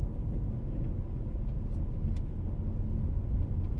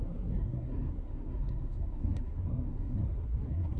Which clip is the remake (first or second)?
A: second